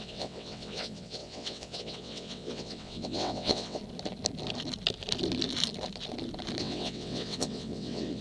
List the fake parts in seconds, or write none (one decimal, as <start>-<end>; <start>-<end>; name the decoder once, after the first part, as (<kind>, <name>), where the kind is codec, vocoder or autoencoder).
0.0-3.8 (vocoder, WaveNeXt); 6.6-8.2